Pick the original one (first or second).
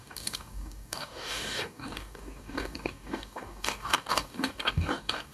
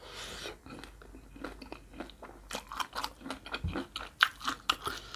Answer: second